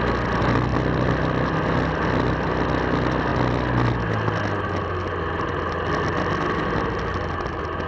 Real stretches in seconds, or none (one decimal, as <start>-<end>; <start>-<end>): 0.0-7.9